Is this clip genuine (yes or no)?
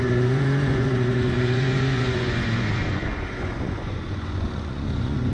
no